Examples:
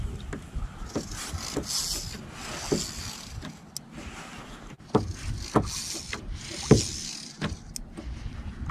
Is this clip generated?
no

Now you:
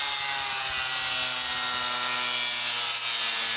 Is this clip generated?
no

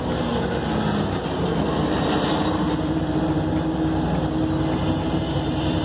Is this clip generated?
no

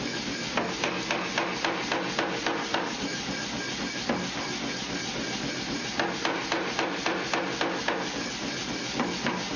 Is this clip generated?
no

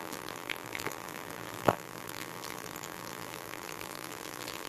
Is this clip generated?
yes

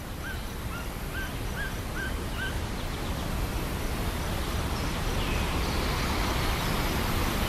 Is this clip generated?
no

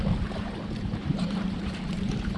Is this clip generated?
yes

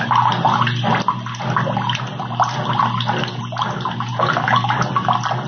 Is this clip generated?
no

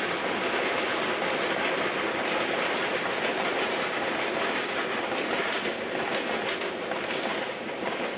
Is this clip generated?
no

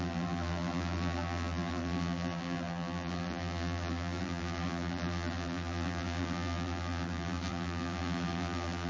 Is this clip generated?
yes